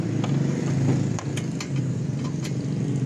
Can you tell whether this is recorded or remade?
recorded